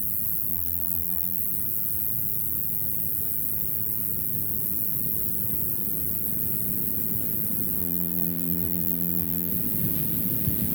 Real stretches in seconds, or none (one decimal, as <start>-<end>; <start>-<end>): 0.0-0.5; 1.4-7.8; 9.5-10.7